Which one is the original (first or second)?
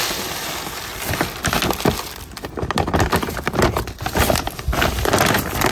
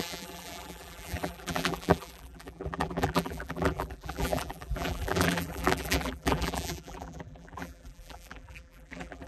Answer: first